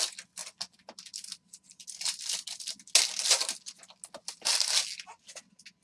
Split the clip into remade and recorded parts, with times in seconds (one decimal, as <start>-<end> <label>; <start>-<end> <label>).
0.0-5.8 recorded